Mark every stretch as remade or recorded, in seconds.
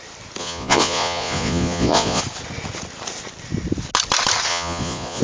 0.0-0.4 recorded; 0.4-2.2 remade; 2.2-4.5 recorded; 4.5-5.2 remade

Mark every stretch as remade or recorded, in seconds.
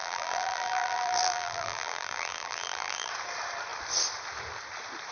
0.0-3.1 remade; 3.1-5.1 recorded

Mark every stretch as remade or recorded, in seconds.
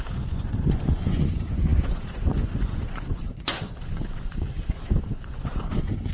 0.0-6.1 remade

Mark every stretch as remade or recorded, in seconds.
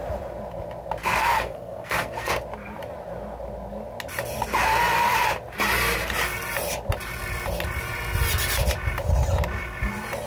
0.0-1.0 recorded; 1.0-2.4 remade; 2.4-10.3 recorded